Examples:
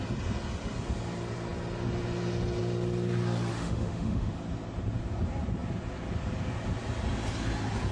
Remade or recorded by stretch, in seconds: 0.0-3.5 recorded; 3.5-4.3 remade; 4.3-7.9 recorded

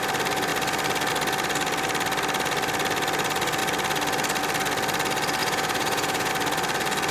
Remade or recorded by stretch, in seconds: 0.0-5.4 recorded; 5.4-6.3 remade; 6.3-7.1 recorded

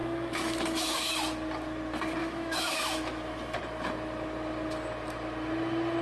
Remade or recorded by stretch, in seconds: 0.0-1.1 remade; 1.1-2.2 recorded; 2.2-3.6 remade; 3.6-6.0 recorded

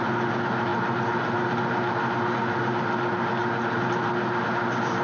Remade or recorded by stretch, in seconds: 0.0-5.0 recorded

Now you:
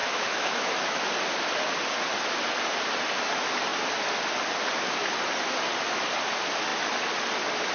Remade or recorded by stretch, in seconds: 0.0-1.1 remade; 1.1-7.7 recorded

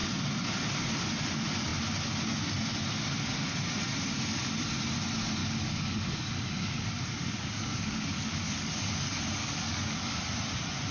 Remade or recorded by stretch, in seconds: 0.0-5.4 recorded; 5.4-8.9 remade; 8.9-9.4 recorded; 9.4-10.2 remade; 10.2-10.9 recorded

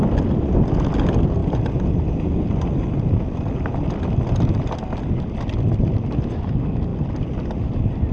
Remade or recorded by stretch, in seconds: 0.0-8.1 recorded

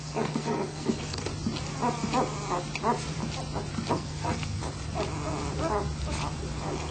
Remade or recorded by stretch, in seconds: 0.0-1.3 remade; 1.3-3.9 recorded; 3.9-4.6 remade; 4.6-6.9 recorded